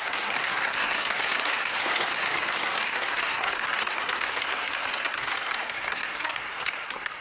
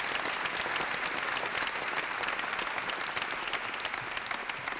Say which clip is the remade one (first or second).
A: first